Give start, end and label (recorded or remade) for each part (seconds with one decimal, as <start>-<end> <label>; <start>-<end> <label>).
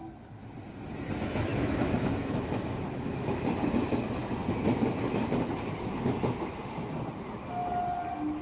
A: 0.0-1.5 recorded; 1.5-3.4 remade; 3.4-8.4 recorded